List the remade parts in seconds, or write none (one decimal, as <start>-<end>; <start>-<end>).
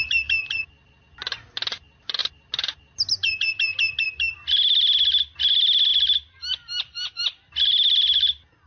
none